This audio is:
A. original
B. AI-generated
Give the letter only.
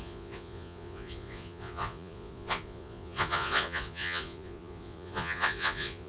B